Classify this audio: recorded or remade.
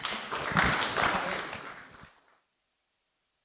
recorded